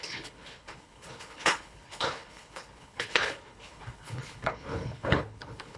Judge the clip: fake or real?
fake